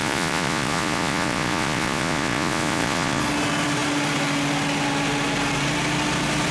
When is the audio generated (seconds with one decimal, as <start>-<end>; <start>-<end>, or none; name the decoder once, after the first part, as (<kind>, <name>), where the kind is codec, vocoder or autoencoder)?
0.0-3.2 (vocoder, Vocos)